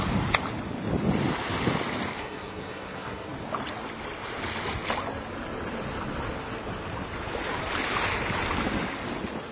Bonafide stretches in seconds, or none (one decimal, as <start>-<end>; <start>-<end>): 0.0-2.2; 3.3-9.5